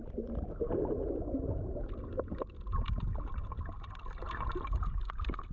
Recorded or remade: recorded